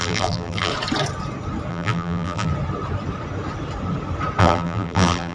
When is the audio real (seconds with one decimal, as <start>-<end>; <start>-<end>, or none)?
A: 0.7-1.7; 2.5-4.4